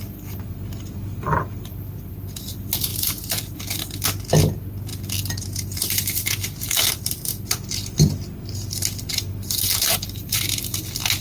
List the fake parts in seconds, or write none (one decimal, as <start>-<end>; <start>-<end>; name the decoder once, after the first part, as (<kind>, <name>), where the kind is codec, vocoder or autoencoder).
9.1-10.4 (vocoder, BigVGAN v2)